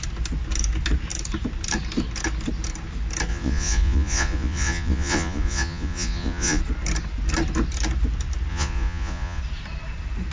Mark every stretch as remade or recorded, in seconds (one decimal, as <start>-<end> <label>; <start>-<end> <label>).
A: 0.0-3.3 recorded; 3.3-6.6 remade; 6.6-8.5 recorded; 8.5-9.4 remade; 9.4-10.3 recorded